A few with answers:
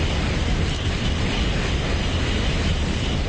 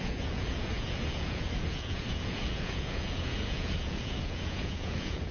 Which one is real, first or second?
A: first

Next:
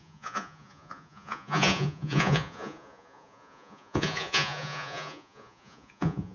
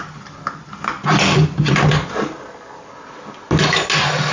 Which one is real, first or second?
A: second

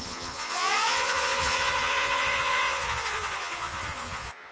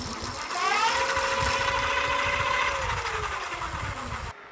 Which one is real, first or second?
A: second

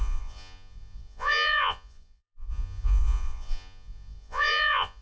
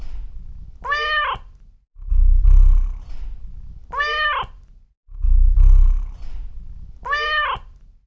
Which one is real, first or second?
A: second